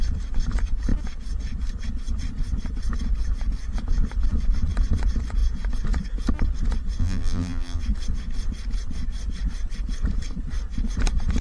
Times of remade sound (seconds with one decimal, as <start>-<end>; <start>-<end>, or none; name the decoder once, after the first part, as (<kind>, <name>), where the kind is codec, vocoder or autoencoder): 7.0-7.8 (vocoder, BigVGAN v2)